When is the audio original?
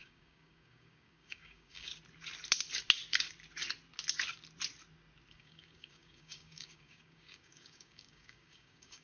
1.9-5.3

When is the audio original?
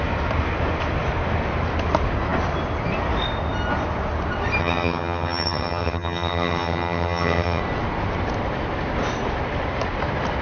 0.0-4.6; 7.6-10.4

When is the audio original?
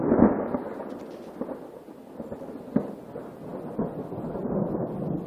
0.0-5.3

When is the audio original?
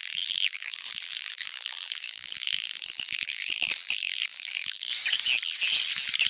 4.9-6.3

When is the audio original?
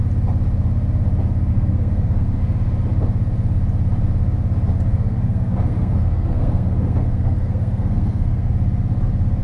0.0-1.5; 2.4-4.9; 8.5-9.4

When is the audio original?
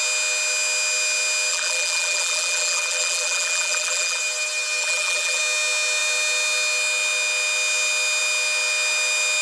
0.0-1.5; 4.2-4.8; 5.4-9.4